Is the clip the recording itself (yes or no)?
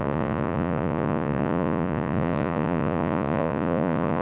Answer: no